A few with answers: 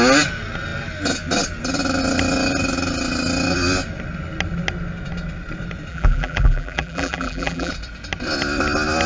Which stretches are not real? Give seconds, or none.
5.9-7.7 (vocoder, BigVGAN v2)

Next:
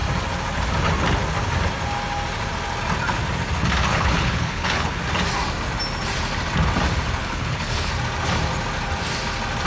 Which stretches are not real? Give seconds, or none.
3.9-5.0 (codec, HILCodec); 7.2-7.9

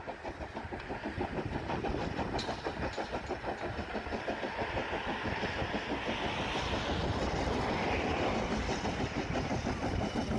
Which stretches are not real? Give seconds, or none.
none

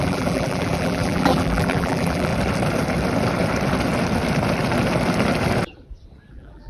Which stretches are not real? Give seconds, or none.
0.0-2.3 (vocoder, BigVGAN v2); 6.3-6.7

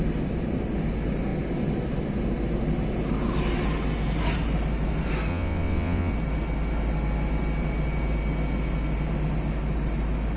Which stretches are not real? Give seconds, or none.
5.3-6.1 (vocoder, WaveNeXt)

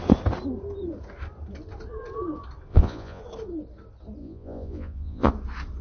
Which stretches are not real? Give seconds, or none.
2.7-3.2 (vocoder, Vocos); 4.2-5.3

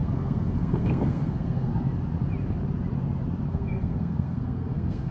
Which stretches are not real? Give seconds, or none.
0.0-1.7 (codec, SNAC); 3.5-5.1